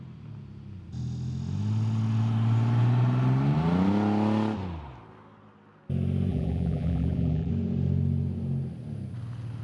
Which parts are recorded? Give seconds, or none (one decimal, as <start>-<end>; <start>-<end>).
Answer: 0.0-6.3; 7.5-9.6